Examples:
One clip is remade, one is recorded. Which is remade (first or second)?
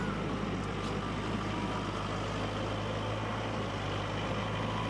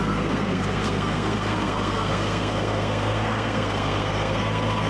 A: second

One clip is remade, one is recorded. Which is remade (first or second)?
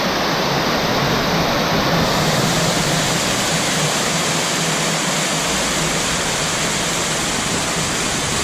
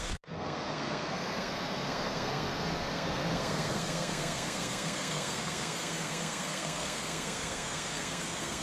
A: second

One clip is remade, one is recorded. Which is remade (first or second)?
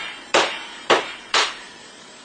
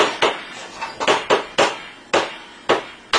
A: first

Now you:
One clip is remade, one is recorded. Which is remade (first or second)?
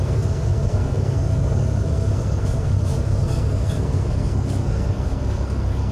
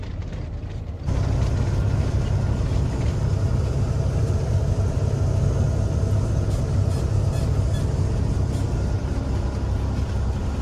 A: first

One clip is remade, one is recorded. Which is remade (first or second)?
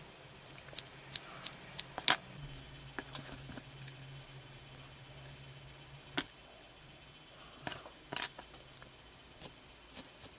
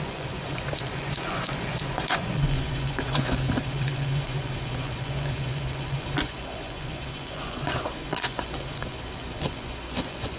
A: second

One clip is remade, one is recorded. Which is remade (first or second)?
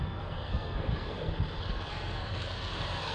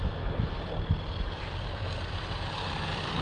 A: first